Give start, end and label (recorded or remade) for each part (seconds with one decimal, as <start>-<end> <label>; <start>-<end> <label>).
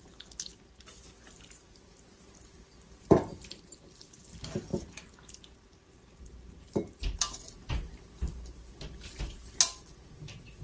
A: 0.0-10.6 recorded